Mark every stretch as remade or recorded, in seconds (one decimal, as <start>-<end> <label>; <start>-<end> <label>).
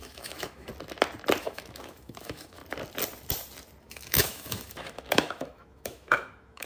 0.0-0.7 remade; 0.7-1.4 recorded; 1.4-2.6 remade; 2.6-3.8 recorded; 3.8-6.7 remade